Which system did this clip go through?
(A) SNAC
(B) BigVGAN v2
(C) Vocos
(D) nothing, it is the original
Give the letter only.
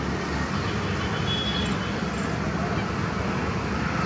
D